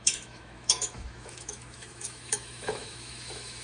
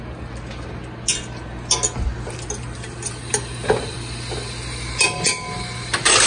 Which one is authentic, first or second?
second